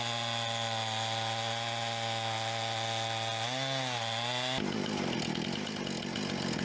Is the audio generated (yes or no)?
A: no